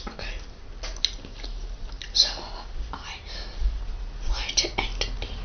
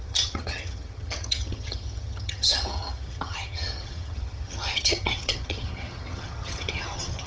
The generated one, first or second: second